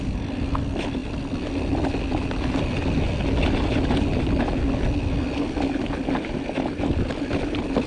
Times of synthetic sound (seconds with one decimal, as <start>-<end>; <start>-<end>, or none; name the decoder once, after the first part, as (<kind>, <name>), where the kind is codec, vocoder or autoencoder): none